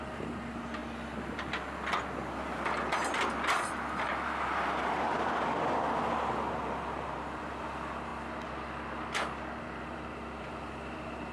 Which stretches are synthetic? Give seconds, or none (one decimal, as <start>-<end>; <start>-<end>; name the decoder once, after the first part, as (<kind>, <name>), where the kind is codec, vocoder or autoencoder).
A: 0.0-0.8 (vocoder, BigVGAN v2); 4.4-8.1; 9.6-11.3